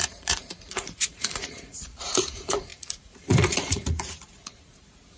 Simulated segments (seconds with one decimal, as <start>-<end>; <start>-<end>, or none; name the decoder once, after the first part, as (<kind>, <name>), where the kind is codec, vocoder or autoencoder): 0.0-5.2 (vocoder, Vocos)